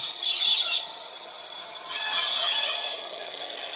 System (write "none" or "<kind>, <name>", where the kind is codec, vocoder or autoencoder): vocoder, HiFi-GAN